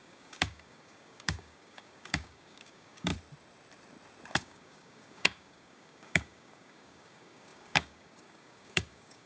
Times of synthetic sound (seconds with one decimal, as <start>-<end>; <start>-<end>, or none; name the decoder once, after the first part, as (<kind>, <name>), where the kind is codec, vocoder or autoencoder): 0.0-3.1 (codec, DAC); 4.4-9.3